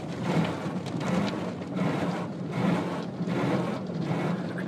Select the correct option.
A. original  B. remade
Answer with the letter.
A